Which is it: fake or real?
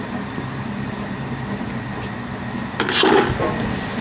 real